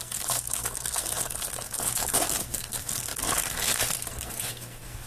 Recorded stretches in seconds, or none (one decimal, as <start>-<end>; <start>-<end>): none